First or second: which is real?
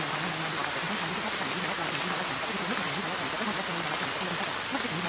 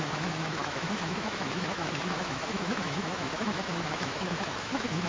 first